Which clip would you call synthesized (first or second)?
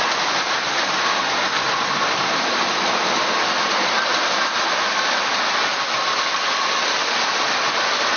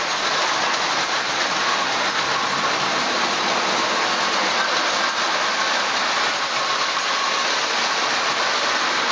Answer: first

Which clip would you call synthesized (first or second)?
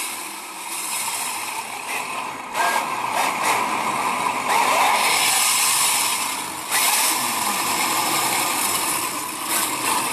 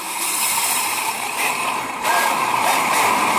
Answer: second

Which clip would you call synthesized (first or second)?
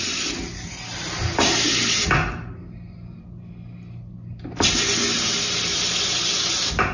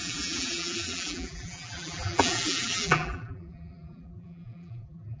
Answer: second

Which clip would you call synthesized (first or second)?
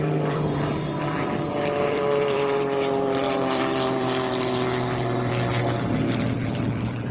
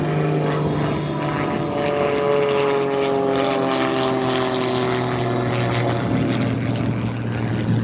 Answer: first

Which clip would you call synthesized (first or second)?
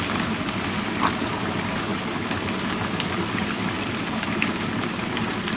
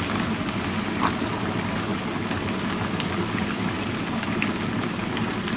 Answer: first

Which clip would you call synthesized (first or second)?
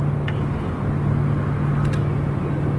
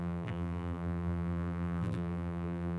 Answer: second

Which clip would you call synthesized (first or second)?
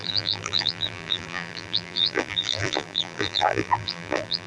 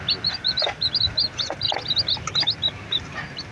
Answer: first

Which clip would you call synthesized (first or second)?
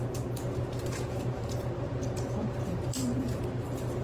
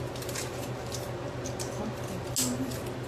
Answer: first